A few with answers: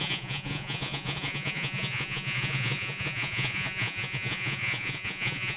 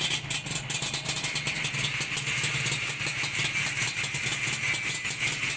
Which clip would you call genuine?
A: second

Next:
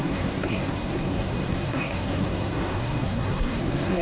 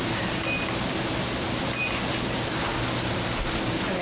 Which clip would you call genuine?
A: second